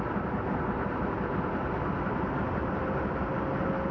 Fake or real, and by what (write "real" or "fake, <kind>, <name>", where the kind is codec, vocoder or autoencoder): real